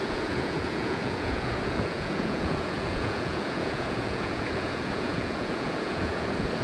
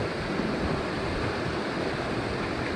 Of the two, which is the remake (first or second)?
first